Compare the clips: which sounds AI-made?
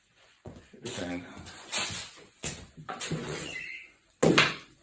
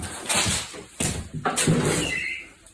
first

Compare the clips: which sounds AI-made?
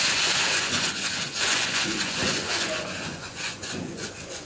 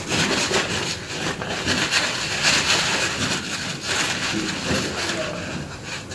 first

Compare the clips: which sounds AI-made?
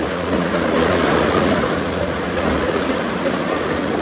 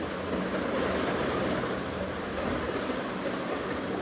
first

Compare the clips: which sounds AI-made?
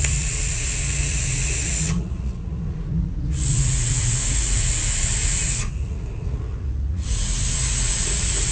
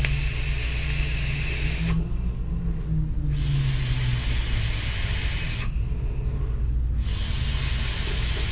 first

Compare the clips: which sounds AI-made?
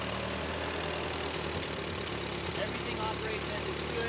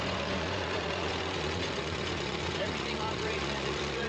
second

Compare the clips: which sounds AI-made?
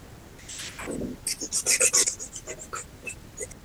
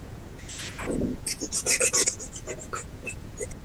second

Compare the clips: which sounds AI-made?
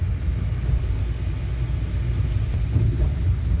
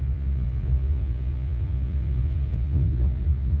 second